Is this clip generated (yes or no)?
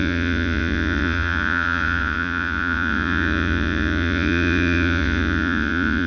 yes